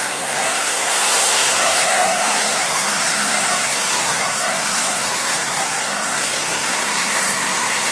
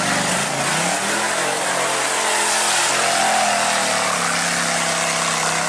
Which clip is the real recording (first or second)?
second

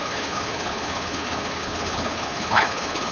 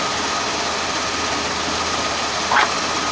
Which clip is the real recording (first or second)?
second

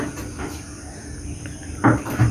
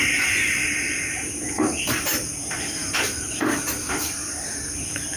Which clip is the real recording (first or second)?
first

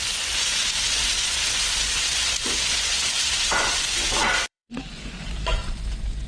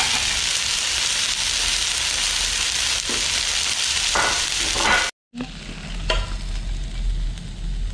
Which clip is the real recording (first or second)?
second